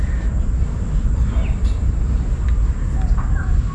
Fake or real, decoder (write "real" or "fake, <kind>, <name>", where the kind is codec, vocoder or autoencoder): real